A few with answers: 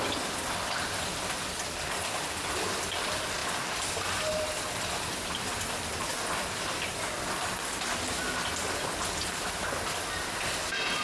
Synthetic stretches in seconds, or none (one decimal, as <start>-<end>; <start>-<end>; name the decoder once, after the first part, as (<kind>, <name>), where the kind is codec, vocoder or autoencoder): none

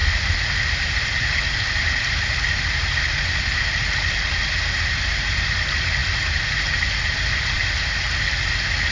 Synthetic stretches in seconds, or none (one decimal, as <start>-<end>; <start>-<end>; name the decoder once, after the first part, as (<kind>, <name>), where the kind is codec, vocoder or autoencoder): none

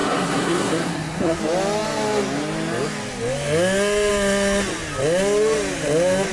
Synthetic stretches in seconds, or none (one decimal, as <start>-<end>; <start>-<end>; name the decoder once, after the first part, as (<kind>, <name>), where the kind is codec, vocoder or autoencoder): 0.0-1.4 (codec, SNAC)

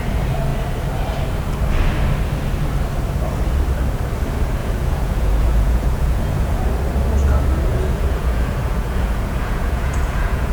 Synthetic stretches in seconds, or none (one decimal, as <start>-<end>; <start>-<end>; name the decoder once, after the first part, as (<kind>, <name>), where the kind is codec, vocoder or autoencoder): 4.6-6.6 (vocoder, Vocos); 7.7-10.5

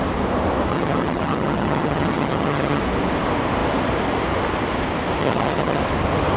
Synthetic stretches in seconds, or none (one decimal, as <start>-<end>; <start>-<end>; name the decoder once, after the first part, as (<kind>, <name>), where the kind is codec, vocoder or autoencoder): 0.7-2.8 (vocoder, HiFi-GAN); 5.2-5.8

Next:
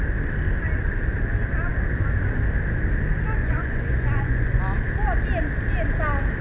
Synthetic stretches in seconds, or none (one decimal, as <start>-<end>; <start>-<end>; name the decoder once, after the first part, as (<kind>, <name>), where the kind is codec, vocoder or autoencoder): 3.4-4.6 (vocoder, Vocos)

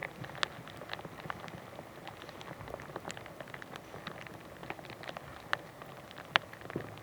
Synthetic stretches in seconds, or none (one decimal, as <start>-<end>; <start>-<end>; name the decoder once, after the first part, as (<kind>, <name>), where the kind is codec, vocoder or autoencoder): none

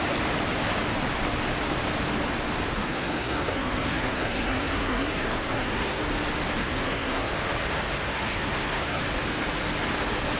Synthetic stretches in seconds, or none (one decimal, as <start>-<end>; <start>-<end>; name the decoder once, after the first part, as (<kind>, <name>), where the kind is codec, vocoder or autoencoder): 2.7-6.0 (codec, SNAC); 6.6-7.3; 8.1-9.0